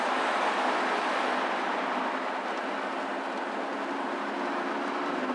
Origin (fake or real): real